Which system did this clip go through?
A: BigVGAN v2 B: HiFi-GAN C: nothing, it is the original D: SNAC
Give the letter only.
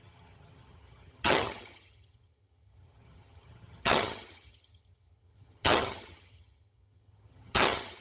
B